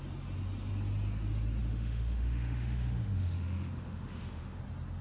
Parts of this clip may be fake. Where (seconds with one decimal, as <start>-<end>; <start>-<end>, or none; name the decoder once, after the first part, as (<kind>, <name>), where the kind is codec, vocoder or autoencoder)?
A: 1.6-4.6 (autoencoder, DAC-VAE)